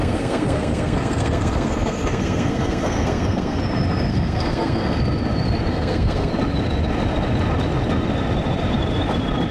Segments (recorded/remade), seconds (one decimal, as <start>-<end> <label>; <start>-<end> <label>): 0.0-3.6 remade; 3.6-4.1 recorded; 4.1-5.0 remade; 5.0-5.7 recorded; 5.7-6.3 remade; 6.3-9.5 recorded